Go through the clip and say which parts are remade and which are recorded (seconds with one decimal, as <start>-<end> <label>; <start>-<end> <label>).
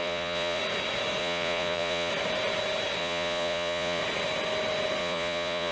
0.0-0.6 remade; 0.6-1.2 recorded; 1.2-2.1 remade; 2.1-3.0 recorded; 3.0-4.0 remade; 4.0-5.0 recorded; 5.0-5.7 remade